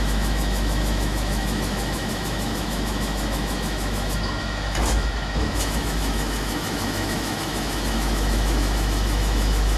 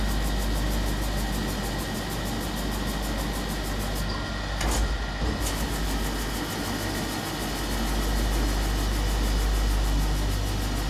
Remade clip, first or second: first